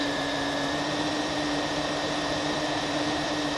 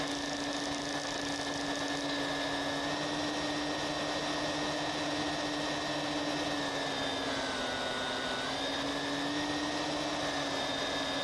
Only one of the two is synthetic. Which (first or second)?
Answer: first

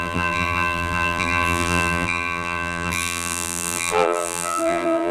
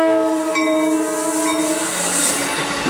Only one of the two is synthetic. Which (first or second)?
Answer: first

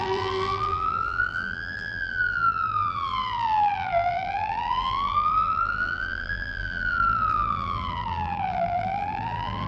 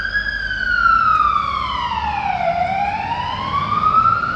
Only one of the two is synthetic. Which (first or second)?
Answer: first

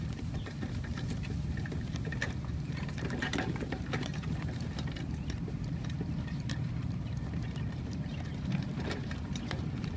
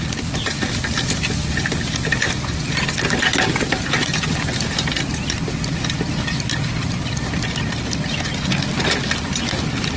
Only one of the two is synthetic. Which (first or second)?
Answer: first